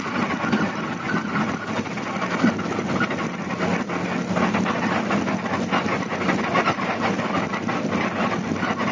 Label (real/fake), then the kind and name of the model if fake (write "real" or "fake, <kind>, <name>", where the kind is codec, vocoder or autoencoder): real